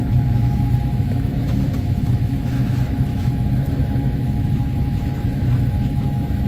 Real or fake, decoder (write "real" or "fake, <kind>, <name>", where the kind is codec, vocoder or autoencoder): fake, autoencoder, DAC-VAE